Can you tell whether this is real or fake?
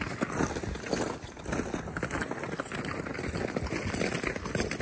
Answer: real